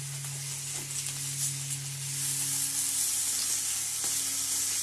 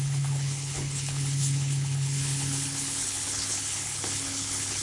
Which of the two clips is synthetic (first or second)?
second